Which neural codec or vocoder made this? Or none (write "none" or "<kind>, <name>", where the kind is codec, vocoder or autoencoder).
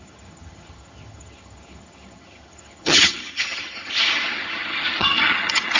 vocoder, HiFi-GAN